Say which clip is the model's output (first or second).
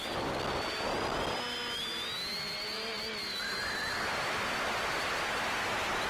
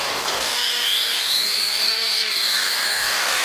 second